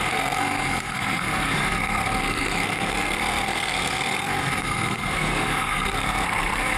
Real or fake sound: fake